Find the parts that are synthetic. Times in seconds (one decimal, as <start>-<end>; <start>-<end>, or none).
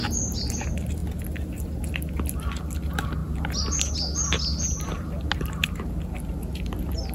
none